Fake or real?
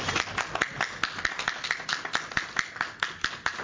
real